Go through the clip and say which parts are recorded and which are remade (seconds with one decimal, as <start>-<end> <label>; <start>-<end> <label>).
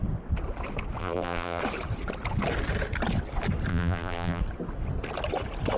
0.0-1.0 recorded; 1.0-1.6 remade; 1.6-3.7 recorded; 3.7-4.4 remade; 4.4-5.8 recorded